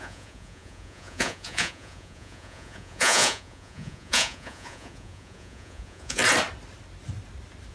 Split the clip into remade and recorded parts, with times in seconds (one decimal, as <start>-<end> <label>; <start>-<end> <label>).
0.0-6.2 remade; 6.2-7.7 recorded